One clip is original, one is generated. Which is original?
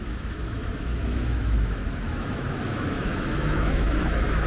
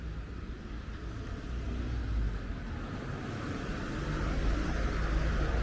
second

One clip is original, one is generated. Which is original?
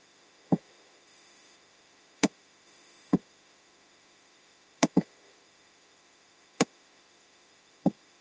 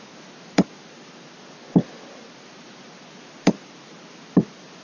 second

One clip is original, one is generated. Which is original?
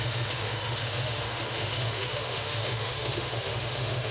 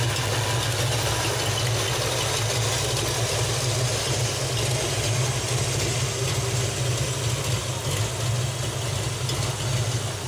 second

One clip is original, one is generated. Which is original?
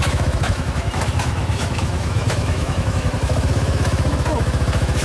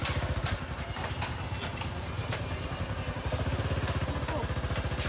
second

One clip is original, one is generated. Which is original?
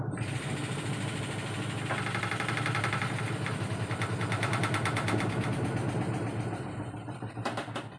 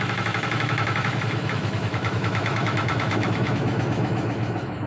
first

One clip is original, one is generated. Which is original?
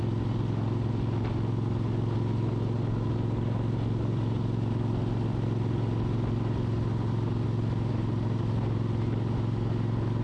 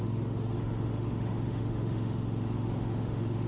first